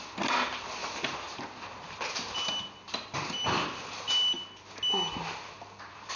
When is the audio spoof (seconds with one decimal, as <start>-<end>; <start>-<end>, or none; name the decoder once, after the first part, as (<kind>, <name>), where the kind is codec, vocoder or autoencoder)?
none

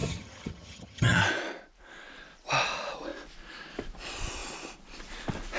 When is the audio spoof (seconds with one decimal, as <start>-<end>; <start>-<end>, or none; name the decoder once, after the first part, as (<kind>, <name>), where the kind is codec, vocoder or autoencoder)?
0.0-1.2 (vocoder, HiFi-GAN)

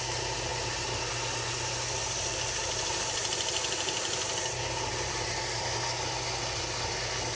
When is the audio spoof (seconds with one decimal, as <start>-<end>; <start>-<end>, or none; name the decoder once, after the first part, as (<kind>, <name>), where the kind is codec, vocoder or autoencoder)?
none

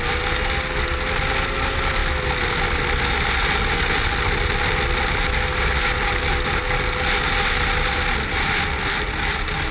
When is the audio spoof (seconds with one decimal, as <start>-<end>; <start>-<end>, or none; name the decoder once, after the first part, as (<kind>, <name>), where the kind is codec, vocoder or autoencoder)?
none

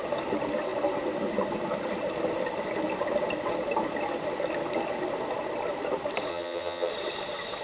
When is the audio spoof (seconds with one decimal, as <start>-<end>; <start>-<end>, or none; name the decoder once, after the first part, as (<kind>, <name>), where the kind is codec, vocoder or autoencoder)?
6.3-6.9 (vocoder, HiFi-GAN)

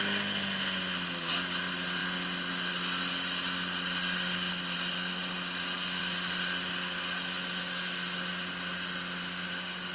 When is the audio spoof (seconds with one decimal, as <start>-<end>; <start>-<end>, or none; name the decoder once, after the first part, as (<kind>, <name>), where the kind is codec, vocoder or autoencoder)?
none

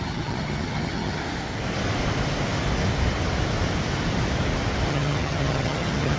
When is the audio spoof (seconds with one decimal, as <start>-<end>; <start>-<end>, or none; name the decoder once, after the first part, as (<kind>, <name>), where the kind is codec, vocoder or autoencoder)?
0.0-1.2 (vocoder, HiFi-GAN); 4.9-6.2